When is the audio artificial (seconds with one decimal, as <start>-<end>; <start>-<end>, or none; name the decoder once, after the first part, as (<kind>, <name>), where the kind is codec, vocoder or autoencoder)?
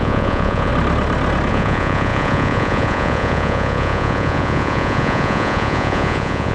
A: 0.0-0.7 (vocoder, Vocos); 1.5-6.5